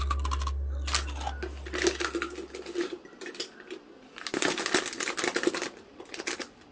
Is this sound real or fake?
real